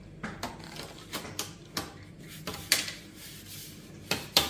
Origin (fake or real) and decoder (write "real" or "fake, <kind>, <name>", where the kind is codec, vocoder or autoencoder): real